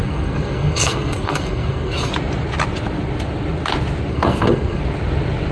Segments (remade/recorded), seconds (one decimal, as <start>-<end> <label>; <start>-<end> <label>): 0.0-2.1 remade; 2.1-4.1 recorded; 4.1-4.8 remade; 4.8-5.5 recorded